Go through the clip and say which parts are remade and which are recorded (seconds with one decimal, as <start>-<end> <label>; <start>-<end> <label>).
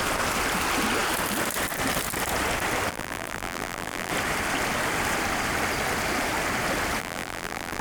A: 0.0-2.9 recorded; 2.9-4.1 remade; 4.1-7.0 recorded; 7.0-7.8 remade